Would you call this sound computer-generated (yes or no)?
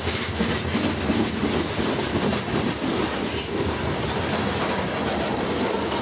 no